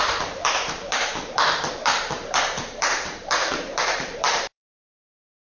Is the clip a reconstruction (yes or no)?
yes